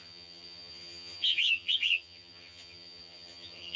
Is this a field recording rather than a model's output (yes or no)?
no